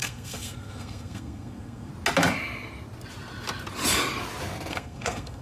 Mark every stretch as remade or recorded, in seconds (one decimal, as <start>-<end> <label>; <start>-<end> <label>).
0.0-1.9 remade; 1.9-4.7 recorded; 4.7-5.4 remade